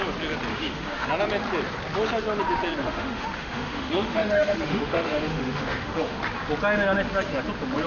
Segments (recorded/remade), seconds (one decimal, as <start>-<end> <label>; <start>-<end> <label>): 0.0-0.5 recorded; 0.5-1.1 remade; 1.1-2.8 recorded; 2.8-6.2 remade; 6.2-7.9 recorded